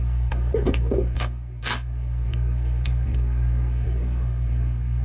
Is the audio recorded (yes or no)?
no